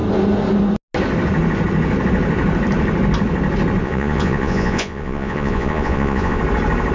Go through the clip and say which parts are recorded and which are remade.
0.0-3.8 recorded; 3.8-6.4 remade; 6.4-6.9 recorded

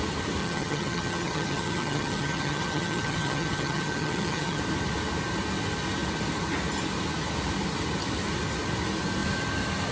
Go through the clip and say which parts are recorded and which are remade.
0.0-0.4 recorded; 0.4-4.6 remade; 4.6-9.9 recorded

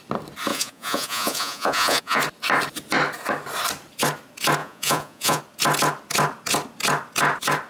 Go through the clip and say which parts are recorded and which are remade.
0.0-0.5 recorded; 0.5-2.2 remade; 2.2-4.6 recorded; 4.6-5.4 remade; 5.4-7.7 recorded

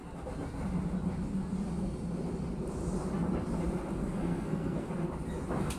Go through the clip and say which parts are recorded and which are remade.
0.0-4.0 recorded; 4.0-4.9 remade; 4.9-5.8 recorded